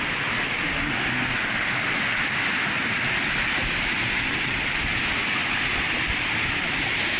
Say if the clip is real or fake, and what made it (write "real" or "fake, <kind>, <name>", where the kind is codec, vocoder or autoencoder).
real